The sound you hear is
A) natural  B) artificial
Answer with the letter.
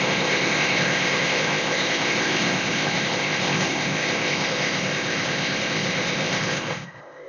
B